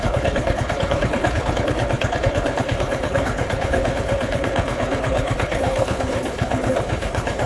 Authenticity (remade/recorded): remade